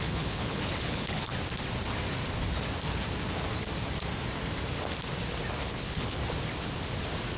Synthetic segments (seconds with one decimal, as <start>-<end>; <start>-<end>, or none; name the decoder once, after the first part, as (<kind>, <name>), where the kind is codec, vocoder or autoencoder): 0.0-1.3 (codec, HILCodec); 5.6-6.2